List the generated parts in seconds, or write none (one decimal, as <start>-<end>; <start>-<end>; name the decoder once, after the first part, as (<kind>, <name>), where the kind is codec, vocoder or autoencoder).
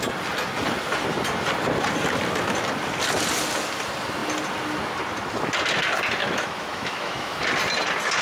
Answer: 6.2-7.4 (autoencoder, DAC-VAE)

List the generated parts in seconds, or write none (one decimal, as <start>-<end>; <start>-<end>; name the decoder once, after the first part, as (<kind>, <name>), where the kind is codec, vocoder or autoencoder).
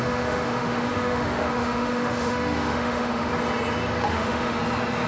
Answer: 0.0-3.3 (autoencoder, DAC-VAE); 4.1-4.6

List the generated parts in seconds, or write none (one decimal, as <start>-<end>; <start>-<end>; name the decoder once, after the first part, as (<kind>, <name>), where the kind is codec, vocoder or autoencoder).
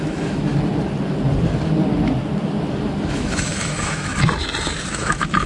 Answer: 0.0-0.5 (autoencoder, DAC-VAE); 3.0-4.1; 4.9-5.5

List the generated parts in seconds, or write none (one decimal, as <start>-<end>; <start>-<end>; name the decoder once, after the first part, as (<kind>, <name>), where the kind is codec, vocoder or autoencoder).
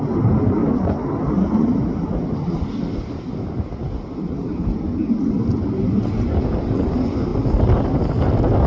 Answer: none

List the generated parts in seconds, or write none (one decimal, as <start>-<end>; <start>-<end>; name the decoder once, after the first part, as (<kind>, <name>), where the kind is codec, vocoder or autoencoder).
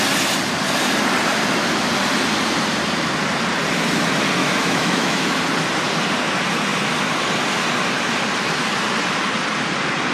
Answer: 4.4-5.4 (autoencoder, DAC-VAE)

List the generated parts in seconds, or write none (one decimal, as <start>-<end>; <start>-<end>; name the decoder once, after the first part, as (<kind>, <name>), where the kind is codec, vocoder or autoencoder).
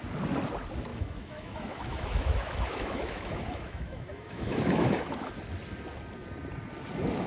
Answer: 0.9-5.3 (autoencoder, DAC-VAE)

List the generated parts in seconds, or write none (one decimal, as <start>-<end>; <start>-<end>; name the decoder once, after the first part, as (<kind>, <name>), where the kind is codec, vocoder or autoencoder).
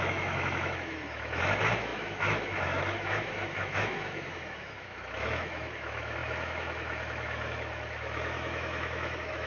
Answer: 0.0-9.5 (autoencoder, DAC-VAE)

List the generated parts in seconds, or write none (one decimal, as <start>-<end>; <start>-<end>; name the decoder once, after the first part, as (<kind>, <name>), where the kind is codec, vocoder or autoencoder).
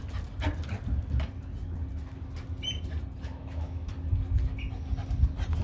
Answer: 3.3-3.9 (autoencoder, DAC-VAE)